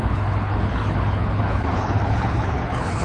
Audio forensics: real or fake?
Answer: fake